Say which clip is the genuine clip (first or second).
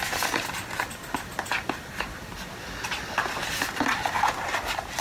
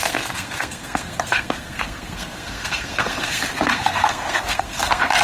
first